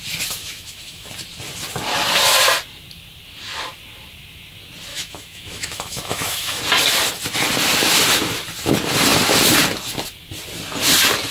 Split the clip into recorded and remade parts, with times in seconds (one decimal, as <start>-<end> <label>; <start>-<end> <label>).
0.0-0.4 recorded; 0.4-1.1 remade; 1.1-4.9 recorded; 4.9-6.6 remade; 6.6-11.3 recorded